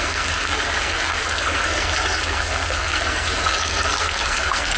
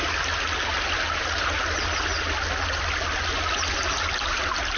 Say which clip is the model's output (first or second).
first